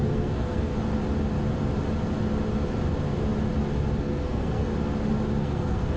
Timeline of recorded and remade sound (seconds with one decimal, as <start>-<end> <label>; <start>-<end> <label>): 0.0-0.7 remade; 0.7-4.0 recorded; 4.0-4.7 remade; 4.7-5.4 recorded; 5.4-6.0 remade